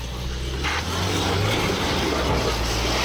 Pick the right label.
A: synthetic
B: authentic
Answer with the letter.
B